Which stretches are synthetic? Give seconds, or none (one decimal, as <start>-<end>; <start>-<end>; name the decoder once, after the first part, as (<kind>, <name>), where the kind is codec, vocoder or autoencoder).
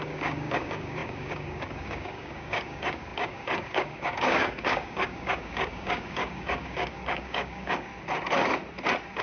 0.0-7.9 (codec, DAC)